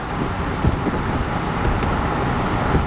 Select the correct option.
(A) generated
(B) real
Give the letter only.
B